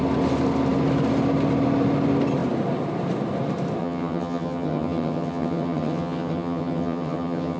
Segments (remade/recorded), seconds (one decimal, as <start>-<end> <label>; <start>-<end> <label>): 0.0-3.8 recorded; 3.8-7.6 remade